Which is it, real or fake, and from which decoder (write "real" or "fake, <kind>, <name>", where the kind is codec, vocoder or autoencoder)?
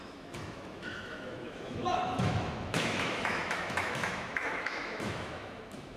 fake, autoencoder, DAC-VAE